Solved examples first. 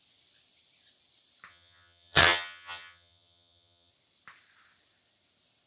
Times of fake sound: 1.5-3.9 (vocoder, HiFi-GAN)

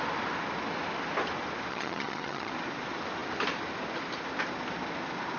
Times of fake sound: 1.7-2.5 (vocoder, HiFi-GAN)

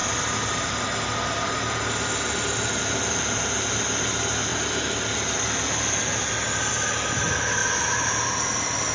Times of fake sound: none

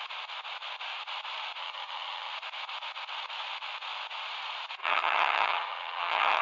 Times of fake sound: 1.6-2.3 (vocoder, HiFi-GAN); 4.8-6.4

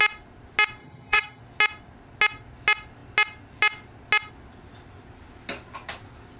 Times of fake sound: 0.8-1.4 (vocoder, HiFi-GAN)

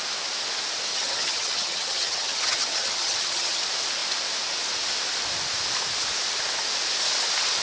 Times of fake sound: 0.9-3.6 (vocoder, HiFi-GAN)

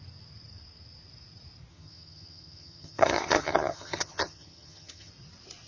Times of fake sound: 1.7-5.1 (vocoder, HiFi-GAN)